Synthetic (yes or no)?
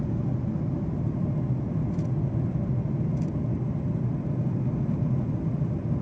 no